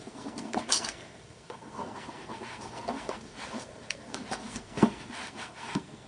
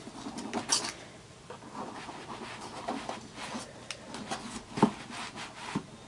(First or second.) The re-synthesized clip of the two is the first